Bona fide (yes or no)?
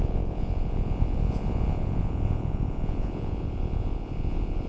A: no